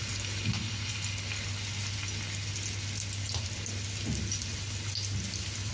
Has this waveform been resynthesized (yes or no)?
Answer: no